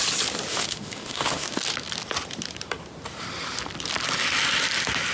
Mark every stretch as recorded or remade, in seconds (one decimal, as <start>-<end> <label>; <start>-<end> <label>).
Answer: 0.0-0.5 recorded; 0.5-1.6 remade; 1.6-5.1 recorded